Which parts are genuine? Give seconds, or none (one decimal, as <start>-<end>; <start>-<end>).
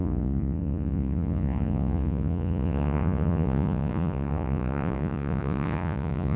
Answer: none